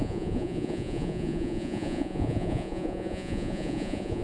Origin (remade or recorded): remade